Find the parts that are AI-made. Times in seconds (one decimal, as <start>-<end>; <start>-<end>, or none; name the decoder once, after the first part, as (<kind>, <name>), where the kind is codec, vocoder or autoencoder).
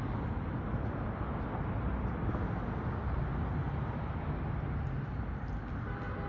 none